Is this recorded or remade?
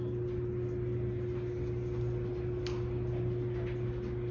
recorded